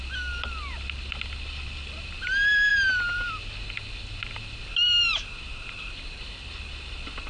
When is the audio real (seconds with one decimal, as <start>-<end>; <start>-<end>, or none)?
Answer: 0.0-7.3